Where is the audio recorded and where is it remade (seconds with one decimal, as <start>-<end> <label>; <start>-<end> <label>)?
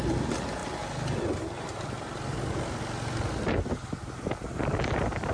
0.0-5.3 recorded